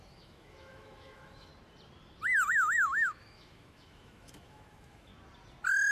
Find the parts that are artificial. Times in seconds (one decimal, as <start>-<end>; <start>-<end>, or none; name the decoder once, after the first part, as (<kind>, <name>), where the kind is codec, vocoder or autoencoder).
0.0-1.5 (autoencoder, DAC-VAE); 2.5-5.1